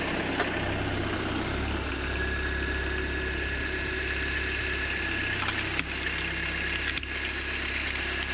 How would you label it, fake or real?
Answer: real